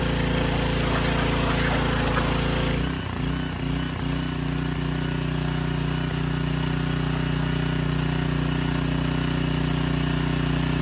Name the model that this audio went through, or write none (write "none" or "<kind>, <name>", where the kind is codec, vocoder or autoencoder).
none